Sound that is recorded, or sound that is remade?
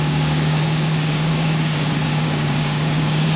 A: remade